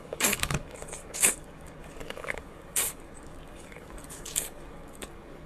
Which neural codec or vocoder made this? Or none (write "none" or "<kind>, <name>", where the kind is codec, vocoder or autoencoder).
codec, DAC